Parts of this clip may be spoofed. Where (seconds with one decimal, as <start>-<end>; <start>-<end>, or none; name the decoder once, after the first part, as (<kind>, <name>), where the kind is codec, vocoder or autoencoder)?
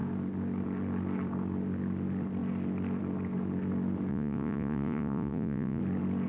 4.1-5.8 (vocoder, Vocos)